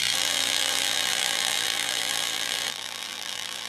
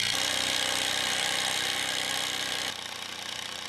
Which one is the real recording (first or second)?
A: second